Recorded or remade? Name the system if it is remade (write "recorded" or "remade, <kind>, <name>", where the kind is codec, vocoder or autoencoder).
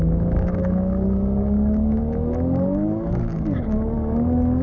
remade, codec, DAC